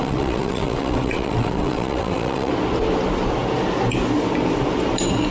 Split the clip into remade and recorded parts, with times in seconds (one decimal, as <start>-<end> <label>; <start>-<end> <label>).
0.0-2.5 remade; 2.5-5.3 recorded